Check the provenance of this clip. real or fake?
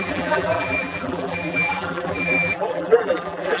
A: fake